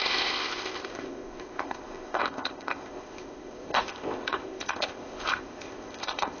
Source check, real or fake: fake